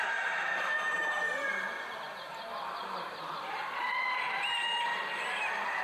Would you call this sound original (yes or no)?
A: no